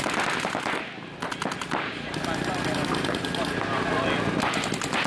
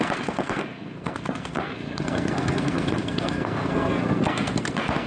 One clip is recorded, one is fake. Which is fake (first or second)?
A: second